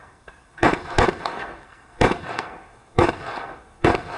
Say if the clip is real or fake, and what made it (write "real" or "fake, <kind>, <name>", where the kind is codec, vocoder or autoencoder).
fake, codec, SNAC